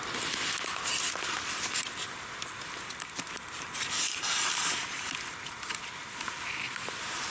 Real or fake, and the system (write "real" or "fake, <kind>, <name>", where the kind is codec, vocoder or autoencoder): real